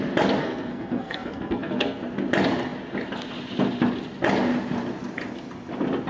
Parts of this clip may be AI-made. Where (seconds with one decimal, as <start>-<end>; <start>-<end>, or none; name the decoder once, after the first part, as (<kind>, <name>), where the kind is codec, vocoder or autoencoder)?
0.4-2.0 (codec, SNAC)